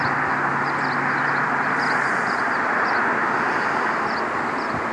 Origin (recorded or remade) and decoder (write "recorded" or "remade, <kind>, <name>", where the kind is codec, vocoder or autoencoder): recorded